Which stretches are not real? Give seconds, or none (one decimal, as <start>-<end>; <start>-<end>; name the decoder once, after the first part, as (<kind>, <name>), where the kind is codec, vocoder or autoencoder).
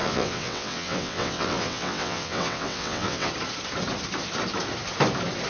0.0-3.3 (vocoder, WaveNeXt)